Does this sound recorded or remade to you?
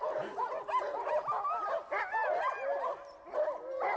recorded